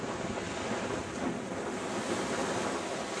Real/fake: real